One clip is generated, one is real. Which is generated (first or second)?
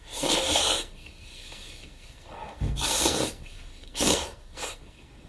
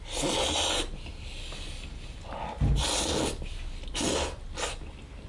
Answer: first